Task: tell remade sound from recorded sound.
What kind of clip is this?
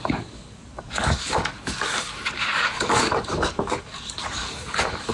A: remade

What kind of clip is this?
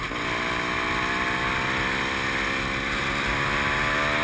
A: recorded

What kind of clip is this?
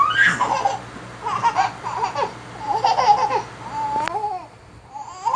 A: recorded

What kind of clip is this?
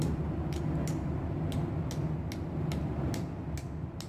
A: recorded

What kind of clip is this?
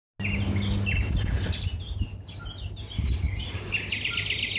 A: recorded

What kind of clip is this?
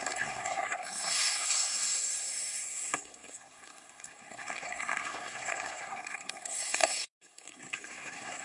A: remade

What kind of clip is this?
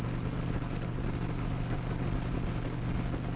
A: recorded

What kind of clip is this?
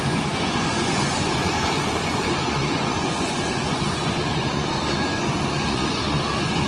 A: remade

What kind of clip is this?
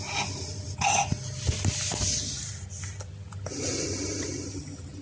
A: recorded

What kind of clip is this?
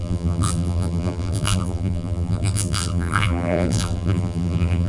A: remade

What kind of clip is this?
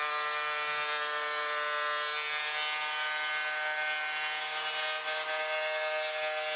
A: recorded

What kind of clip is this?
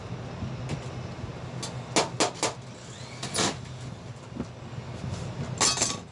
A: recorded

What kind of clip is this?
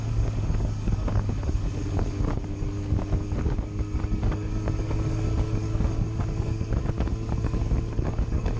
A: remade